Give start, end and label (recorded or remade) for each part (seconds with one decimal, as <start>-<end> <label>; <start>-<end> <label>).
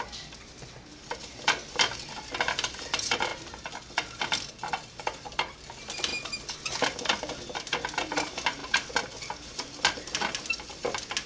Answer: 0.0-11.3 recorded